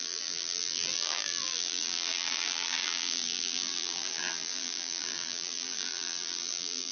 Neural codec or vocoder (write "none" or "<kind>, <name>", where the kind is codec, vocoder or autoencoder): vocoder, BigVGAN v2